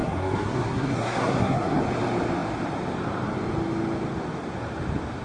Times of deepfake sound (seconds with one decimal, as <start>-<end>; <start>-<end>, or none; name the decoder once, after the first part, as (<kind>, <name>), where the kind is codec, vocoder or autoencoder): 0.0-1.8 (codec, SNAC)